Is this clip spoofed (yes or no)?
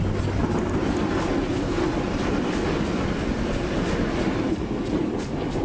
no